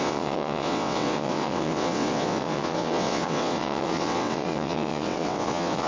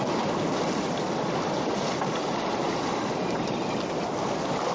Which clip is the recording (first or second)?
second